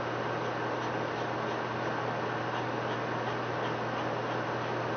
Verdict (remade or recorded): recorded